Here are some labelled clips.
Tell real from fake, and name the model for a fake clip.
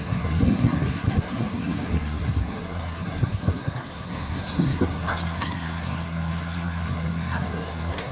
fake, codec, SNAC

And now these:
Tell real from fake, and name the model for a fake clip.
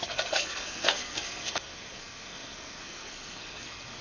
fake, codec, SNAC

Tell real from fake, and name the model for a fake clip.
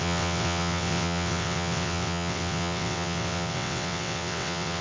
fake, vocoder, WaveNeXt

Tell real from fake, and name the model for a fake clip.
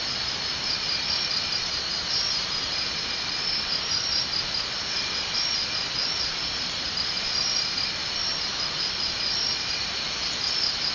real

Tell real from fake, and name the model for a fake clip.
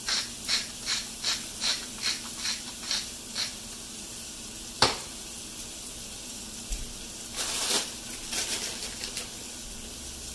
fake, vocoder, BigVGAN v2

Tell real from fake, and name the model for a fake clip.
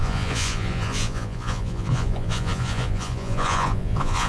fake, vocoder, Vocos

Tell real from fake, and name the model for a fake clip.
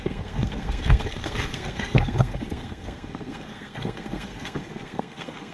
fake, codec, SNAC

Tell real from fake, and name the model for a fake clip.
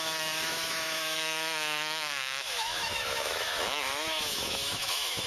fake, autoencoder, DAC-VAE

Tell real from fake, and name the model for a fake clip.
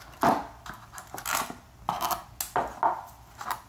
real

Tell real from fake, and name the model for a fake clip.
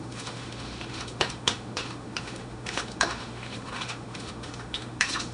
fake, autoencoder, DAC-VAE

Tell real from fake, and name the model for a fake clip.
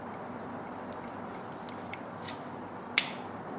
real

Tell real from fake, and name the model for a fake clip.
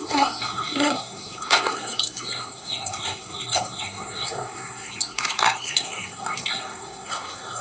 fake, codec, SNAC